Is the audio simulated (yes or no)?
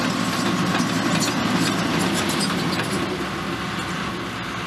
no